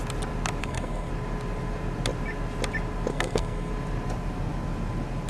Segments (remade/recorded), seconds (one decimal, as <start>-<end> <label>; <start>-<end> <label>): 0.0-0.6 recorded; 0.6-1.1 remade; 1.1-3.1 recorded; 3.1-3.7 remade; 3.7-5.3 recorded